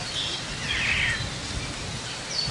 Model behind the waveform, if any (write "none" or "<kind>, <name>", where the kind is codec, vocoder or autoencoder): none